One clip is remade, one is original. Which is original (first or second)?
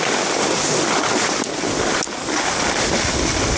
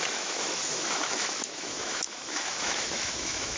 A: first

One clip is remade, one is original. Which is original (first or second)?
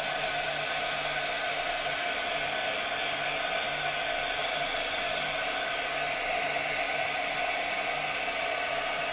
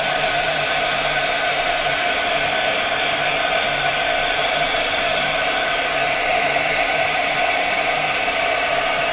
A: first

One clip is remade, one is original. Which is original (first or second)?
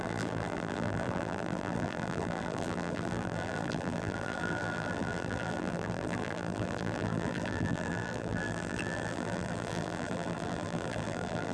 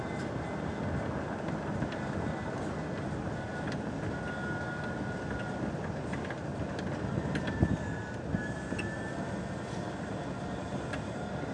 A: second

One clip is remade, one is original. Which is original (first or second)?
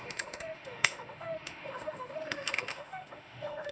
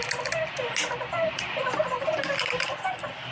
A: second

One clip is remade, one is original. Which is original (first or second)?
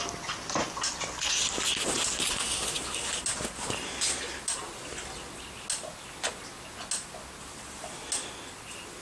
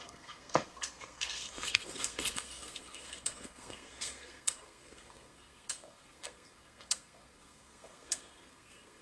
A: first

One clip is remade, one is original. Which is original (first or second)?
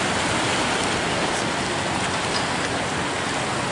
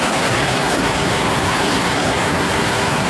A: first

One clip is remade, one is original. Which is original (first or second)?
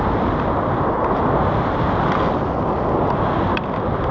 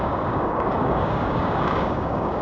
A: first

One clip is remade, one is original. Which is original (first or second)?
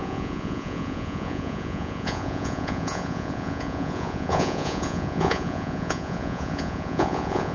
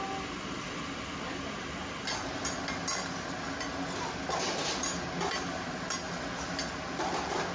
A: second